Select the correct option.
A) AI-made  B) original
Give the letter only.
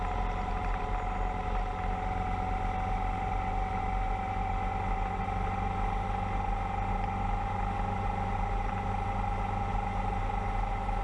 B